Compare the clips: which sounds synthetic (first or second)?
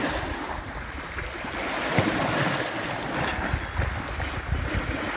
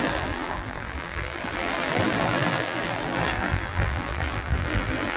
second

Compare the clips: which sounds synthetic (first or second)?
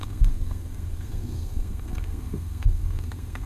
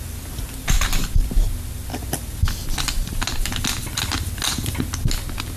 first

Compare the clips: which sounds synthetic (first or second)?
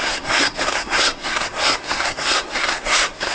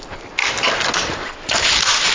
first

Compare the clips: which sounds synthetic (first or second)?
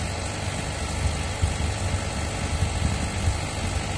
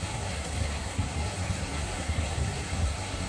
second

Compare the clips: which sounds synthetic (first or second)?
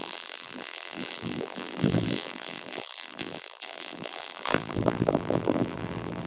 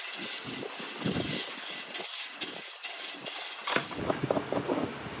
first